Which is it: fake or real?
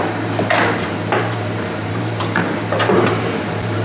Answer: fake